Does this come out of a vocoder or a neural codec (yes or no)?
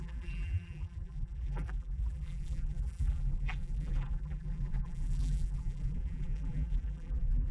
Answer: yes